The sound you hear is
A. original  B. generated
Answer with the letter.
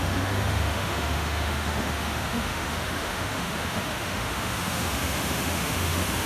B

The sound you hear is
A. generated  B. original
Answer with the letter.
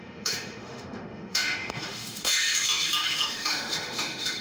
A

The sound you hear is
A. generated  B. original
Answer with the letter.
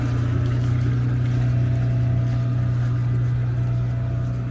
B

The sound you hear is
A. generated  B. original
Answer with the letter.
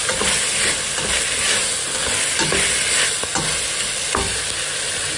B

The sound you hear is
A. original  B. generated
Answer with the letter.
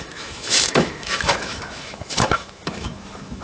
B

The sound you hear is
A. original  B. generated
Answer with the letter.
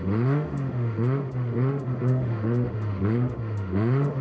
B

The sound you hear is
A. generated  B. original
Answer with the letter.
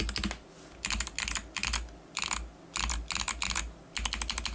B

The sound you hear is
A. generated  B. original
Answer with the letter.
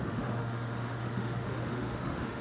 A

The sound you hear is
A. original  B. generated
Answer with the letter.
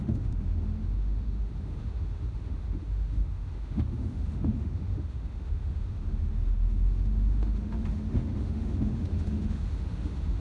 B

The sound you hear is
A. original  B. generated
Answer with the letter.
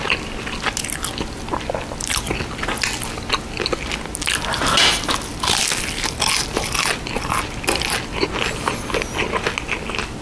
A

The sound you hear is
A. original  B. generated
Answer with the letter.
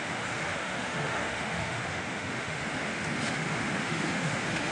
B